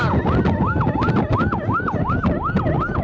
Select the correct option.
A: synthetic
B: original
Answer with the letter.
B